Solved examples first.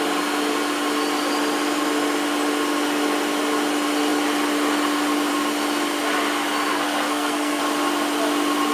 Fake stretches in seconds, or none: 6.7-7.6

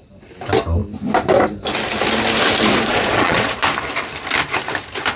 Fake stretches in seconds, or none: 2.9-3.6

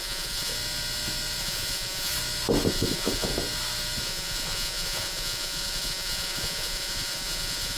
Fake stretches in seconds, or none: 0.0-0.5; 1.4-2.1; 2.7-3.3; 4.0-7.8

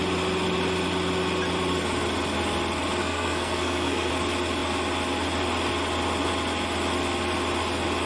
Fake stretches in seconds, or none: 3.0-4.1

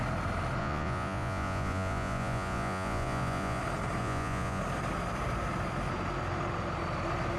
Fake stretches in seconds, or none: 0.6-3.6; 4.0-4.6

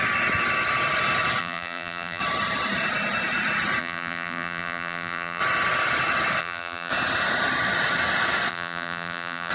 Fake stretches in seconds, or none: 1.4-2.2; 3.8-5.4; 6.4-6.9; 8.5-9.5